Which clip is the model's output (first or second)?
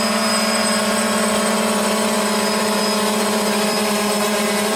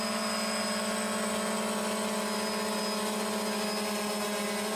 first